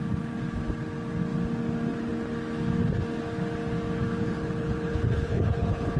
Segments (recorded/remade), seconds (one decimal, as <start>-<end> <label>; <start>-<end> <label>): 0.0-4.2 recorded; 4.2-6.0 remade